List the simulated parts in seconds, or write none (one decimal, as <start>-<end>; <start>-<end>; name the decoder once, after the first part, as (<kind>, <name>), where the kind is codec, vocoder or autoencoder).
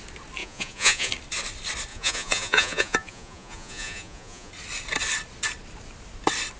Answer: 0.4-1.1 (vocoder, Vocos); 1.9-4.5